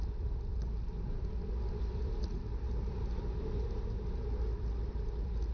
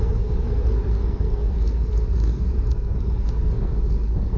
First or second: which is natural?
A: first